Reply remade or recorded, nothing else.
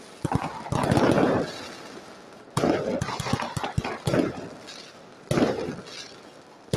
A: recorded